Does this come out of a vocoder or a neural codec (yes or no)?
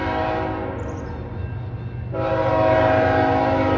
no